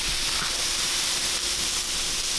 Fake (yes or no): no